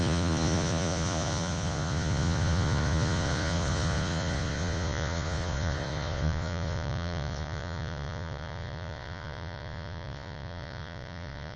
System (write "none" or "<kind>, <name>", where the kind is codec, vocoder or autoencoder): vocoder, Vocos